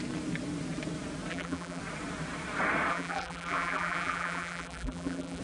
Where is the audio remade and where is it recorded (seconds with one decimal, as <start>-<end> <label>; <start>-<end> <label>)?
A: 0.0-1.3 recorded; 1.3-1.8 remade; 1.8-2.9 recorded; 2.9-5.4 remade